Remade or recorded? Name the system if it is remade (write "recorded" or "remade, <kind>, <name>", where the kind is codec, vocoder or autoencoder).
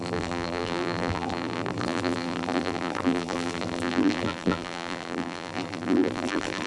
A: remade, vocoder, BigVGAN v2